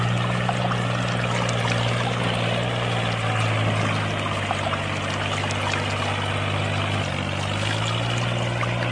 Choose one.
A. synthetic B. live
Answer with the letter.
B